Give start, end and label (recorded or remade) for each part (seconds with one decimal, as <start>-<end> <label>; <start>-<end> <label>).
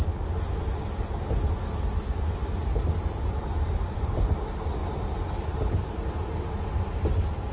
0.0-2.4 recorded; 2.4-4.1 remade; 4.1-7.5 recorded